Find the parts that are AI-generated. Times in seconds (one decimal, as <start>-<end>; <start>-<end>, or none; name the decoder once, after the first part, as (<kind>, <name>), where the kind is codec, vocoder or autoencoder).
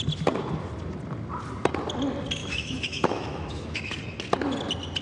2.4-4.0 (autoencoder, DAC-VAE)